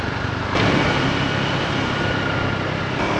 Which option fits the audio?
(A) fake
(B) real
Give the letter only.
A